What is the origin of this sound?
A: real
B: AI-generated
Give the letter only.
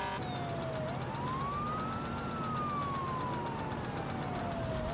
A